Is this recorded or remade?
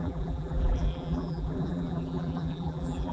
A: remade